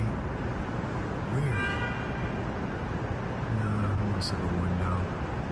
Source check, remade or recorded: recorded